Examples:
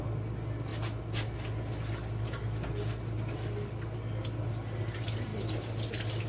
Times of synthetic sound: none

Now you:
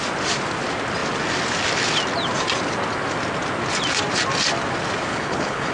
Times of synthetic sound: 5.1-5.7 (codec, HILCodec)

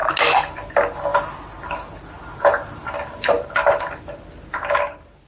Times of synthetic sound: none

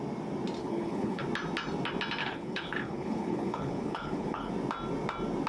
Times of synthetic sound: 0.6-1.2 (codec, HILCodec); 2.2-4.5

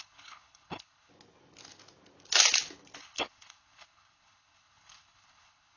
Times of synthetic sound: 0.0-1.1 (codec, HILCodec); 3.0-5.8

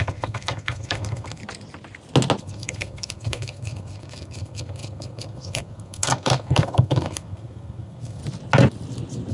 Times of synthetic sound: 0.0-1.4 (codec, SNAC); 2.4-8.2